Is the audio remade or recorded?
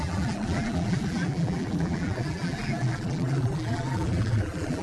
remade